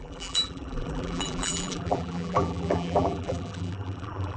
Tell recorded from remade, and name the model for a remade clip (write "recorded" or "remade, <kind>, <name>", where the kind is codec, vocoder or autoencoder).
remade, vocoder, BigVGAN v2